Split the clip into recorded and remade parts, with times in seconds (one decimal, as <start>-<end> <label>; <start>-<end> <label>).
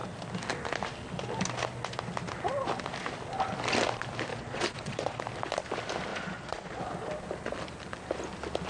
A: 0.0-4.3 recorded; 4.3-5.2 remade; 5.2-6.1 recorded; 6.1-6.8 remade; 6.8-8.7 recorded